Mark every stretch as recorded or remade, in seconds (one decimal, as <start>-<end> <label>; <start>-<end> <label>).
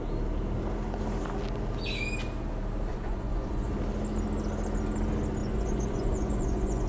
0.0-2.9 recorded; 2.9-3.7 remade; 3.7-5.4 recorded; 5.4-6.9 remade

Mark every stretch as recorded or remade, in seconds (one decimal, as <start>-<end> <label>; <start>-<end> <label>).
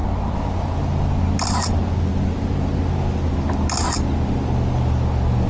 0.0-5.5 recorded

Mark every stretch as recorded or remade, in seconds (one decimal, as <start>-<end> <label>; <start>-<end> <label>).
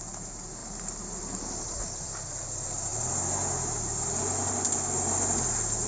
0.0-5.9 recorded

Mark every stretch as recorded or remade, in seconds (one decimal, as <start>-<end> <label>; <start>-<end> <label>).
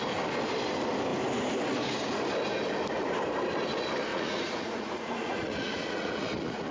0.0-4.1 recorded; 4.1-6.7 remade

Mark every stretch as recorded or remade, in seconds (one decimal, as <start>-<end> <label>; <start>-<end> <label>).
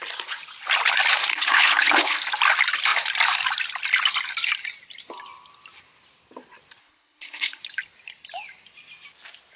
0.0-1.3 recorded; 1.3-2.2 remade; 2.2-6.8 recorded; 6.8-7.6 remade; 7.6-9.6 recorded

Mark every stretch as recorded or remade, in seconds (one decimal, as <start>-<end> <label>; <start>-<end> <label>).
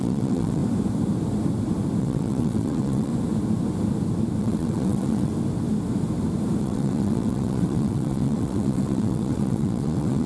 0.0-0.6 remade; 0.6-2.0 recorded; 2.0-3.1 remade; 3.1-4.4 recorded; 4.4-5.3 remade; 5.3-6.6 recorded; 6.6-10.3 remade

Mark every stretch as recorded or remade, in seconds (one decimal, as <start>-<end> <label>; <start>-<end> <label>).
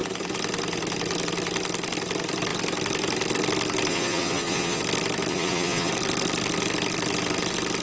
0.0-3.9 recorded; 3.9-4.8 remade; 4.8-5.3 recorded; 5.3-5.9 remade; 5.9-7.8 recorded